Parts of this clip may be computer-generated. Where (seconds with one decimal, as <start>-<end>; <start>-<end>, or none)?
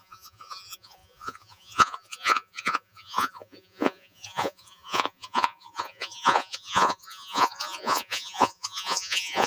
0.0-9.5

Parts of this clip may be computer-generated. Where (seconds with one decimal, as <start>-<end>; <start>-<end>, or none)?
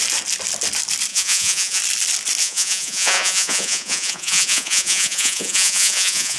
1.1-1.8; 2.4-6.4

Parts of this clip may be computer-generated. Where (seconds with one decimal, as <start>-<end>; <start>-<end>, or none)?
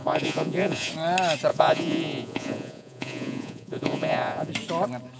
0.0-0.9; 1.5-4.5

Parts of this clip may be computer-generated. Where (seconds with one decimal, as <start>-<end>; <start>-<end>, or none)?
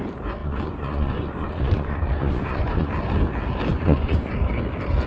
0.4-2.9; 3.7-4.3